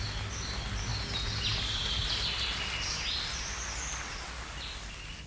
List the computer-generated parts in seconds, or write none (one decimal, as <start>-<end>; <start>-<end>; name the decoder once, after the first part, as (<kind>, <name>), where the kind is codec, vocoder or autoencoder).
none